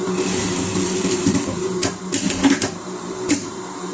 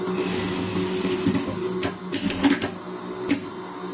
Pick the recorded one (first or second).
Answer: second